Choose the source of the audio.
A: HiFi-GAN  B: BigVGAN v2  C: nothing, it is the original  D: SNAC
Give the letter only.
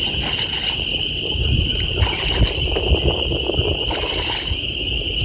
C